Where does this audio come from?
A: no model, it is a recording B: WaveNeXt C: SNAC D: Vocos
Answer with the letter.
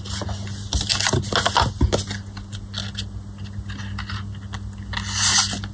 A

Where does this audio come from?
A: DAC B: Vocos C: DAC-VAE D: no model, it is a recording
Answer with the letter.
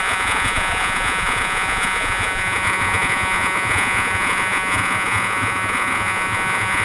B